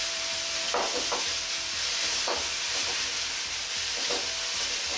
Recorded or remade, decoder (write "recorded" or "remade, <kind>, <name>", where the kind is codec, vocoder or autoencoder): recorded